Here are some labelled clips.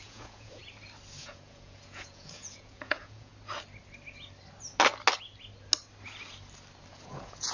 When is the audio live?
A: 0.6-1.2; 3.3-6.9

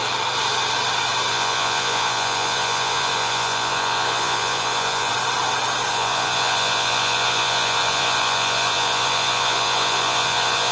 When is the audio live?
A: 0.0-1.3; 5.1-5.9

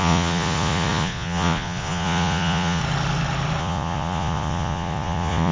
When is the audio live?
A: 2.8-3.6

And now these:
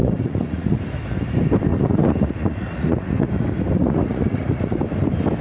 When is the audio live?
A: 0.8-1.7; 3.3-3.8; 4.8-5.4